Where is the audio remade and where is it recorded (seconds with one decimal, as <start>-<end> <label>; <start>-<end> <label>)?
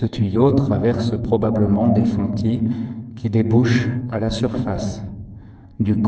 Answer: 0.0-6.1 remade